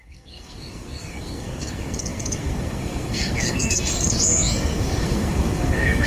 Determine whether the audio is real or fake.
fake